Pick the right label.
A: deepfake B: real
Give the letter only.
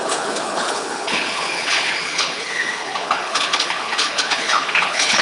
A